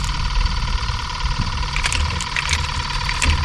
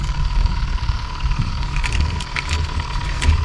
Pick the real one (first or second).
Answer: first